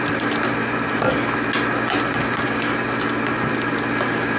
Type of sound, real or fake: real